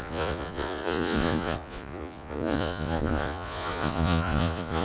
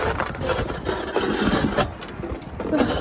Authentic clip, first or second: second